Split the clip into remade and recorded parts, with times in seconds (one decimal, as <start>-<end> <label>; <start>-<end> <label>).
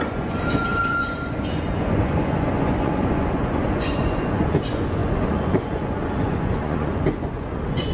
0.0-7.9 remade